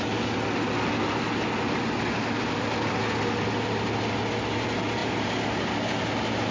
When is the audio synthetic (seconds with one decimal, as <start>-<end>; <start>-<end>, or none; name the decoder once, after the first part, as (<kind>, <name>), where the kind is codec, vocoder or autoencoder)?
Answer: none